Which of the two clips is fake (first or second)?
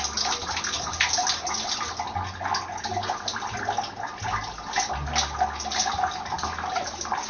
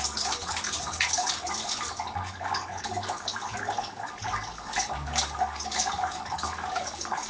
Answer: second